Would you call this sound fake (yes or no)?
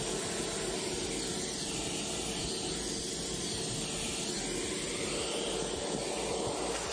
no